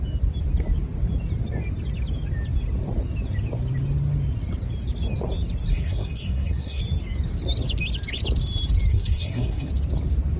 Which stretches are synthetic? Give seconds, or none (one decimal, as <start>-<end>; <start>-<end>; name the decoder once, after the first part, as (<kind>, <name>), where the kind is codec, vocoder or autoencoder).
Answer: 5.7-6.8 (codec, SNAC); 8.9-9.7